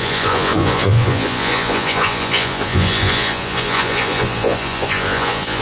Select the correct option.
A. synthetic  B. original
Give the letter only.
A